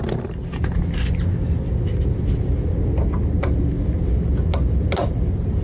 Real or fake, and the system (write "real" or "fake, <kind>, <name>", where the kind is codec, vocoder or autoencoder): real